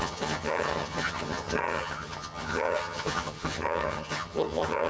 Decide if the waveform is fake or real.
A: fake